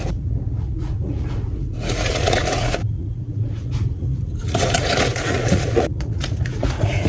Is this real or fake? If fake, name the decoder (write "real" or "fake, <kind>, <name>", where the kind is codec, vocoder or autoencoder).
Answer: fake, vocoder, Vocos